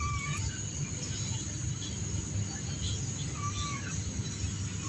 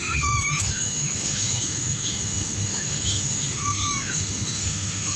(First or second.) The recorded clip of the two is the first